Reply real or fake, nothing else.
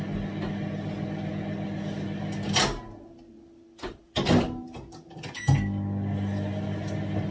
real